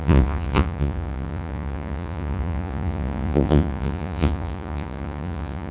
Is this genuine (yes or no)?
no